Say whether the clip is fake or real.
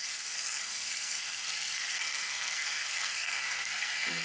fake